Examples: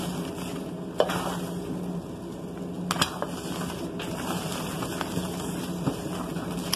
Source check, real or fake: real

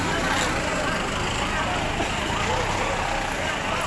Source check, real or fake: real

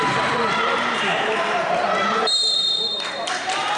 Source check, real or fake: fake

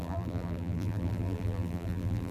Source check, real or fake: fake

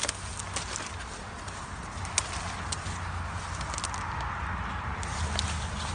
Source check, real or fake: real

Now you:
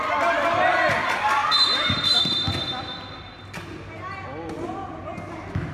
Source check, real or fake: real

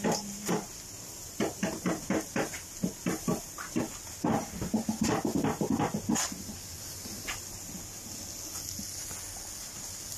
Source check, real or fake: real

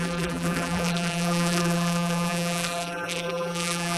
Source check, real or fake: fake